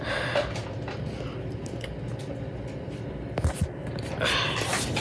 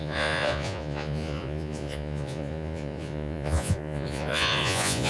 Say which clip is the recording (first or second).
first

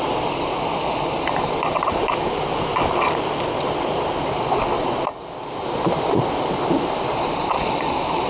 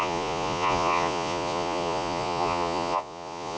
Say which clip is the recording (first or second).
first